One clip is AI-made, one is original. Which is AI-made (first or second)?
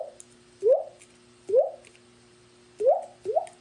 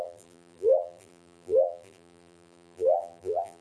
second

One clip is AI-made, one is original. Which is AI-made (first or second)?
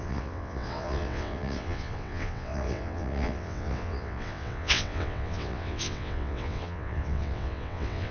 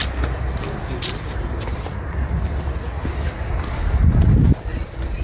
first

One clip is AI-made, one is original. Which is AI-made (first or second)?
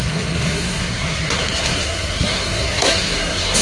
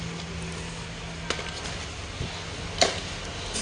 first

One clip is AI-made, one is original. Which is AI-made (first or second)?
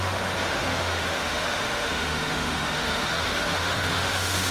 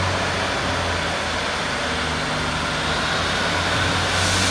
first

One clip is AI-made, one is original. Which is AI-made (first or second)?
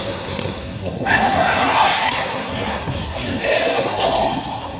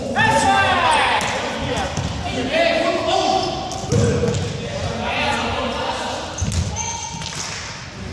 first